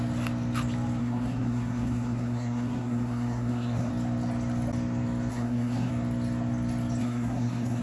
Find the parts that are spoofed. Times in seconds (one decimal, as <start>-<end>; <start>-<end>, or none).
1.0-3.9; 5.3-5.9; 7.0-7.8